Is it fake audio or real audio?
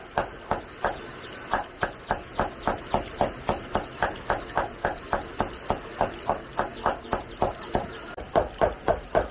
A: real